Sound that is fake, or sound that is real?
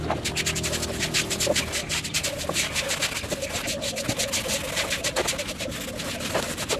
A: real